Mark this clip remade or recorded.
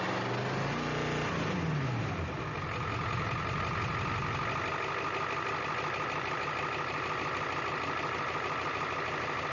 recorded